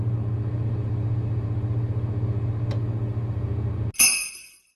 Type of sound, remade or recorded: recorded